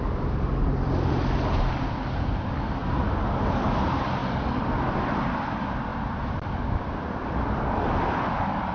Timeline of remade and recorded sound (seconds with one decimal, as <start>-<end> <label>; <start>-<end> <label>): 0.0-5.9 remade; 5.9-8.0 recorded; 8.0-8.7 remade